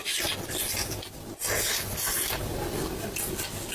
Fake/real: real